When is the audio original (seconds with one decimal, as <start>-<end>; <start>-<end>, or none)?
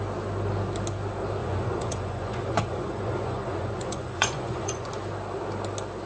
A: 0.0-1.4; 4.9-6.1